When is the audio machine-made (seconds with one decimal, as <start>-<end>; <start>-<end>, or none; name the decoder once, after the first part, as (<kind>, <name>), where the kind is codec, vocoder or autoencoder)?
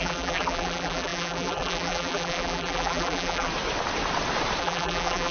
0.0-3.5 (vocoder, BigVGAN v2); 4.6-5.3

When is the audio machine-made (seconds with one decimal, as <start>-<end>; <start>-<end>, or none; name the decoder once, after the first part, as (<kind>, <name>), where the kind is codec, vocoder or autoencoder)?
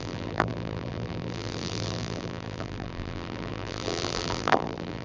0.0-5.0 (vocoder, BigVGAN v2)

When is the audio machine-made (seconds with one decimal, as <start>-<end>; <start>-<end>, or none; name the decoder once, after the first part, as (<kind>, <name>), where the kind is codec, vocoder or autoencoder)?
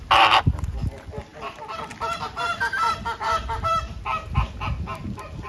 1.3-4.0 (vocoder, BigVGAN v2)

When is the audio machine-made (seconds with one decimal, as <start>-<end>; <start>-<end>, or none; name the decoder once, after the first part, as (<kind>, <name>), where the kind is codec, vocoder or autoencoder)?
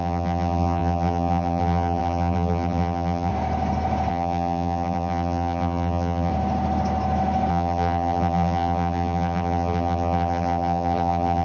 0.0-3.3 (vocoder, BigVGAN v2); 4.1-6.3; 7.5-11.4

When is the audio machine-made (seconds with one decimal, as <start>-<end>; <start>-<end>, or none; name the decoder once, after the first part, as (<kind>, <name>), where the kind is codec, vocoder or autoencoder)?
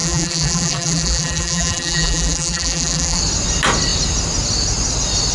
0.0-3.2 (vocoder, BigVGAN v2)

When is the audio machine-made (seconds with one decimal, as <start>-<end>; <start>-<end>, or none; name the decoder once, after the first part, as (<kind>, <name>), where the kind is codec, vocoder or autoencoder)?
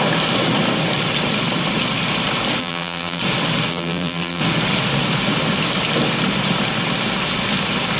2.6-3.2 (vocoder, BigVGAN v2); 3.7-4.4